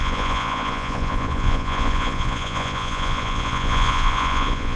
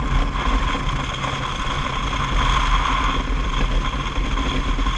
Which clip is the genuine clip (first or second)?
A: second